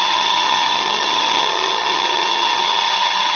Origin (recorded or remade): remade